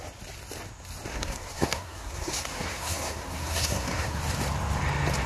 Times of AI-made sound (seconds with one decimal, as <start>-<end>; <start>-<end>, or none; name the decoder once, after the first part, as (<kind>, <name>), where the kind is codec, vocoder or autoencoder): 1.1-4.2 (codec, SNAC)